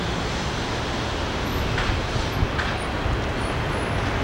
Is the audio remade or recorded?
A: recorded